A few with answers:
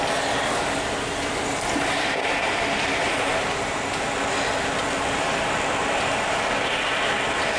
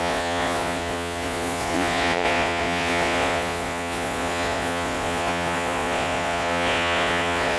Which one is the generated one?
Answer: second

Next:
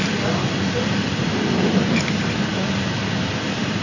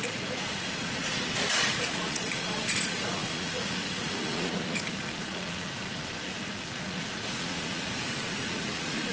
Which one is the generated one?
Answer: second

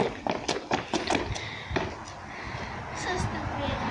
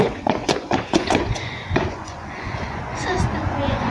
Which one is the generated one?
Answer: second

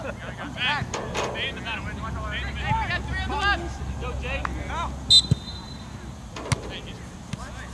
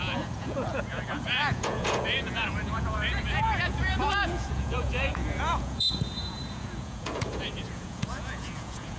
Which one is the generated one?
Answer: second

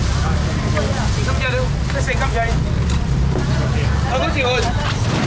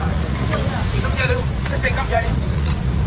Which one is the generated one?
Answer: second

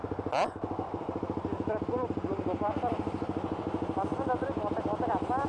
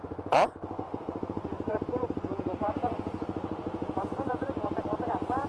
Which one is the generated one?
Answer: second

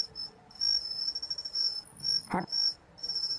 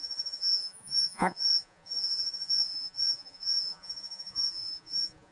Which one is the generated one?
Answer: second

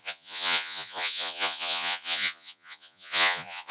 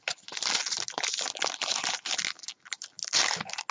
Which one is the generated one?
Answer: first